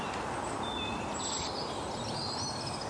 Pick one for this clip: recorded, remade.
recorded